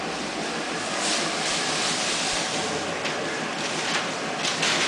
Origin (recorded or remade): recorded